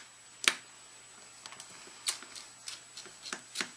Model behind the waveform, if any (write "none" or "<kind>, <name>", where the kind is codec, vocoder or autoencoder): none